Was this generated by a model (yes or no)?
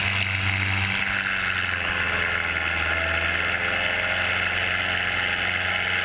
no